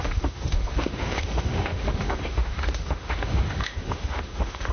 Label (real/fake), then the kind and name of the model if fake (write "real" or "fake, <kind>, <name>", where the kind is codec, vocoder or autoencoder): fake, autoencoder, DAC-VAE